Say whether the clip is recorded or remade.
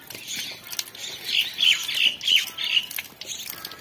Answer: recorded